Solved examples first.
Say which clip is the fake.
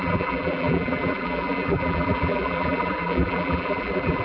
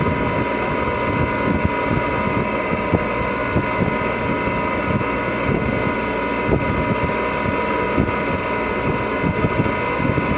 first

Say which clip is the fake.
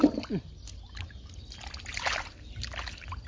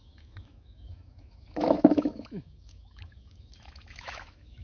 second